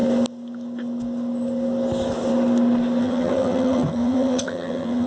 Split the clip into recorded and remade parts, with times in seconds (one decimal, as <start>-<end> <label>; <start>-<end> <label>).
0.0-3.0 recorded; 3.0-5.1 remade